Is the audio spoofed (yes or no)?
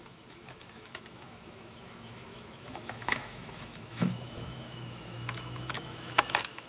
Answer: yes